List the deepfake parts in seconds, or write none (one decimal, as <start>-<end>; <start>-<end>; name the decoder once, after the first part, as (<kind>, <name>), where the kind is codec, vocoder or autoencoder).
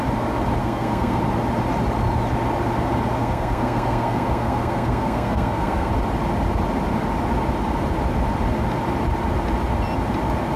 0.6-1.2 (codec, SNAC); 3.2-5.9